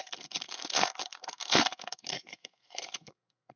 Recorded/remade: remade